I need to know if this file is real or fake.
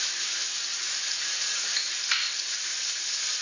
real